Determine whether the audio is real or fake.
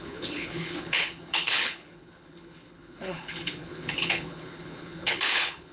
fake